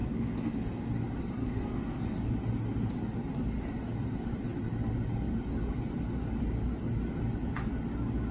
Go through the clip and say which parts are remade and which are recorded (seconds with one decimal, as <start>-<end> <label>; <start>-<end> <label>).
0.0-0.9 remade; 0.9-1.4 recorded; 1.4-2.0 remade; 2.0-8.3 recorded